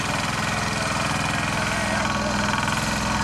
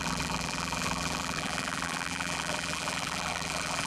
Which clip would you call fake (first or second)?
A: second